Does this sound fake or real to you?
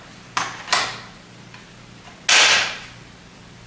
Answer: real